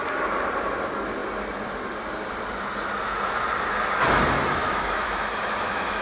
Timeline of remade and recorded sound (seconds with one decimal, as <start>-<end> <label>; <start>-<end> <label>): 0.0-4.6 recorded; 4.6-6.0 remade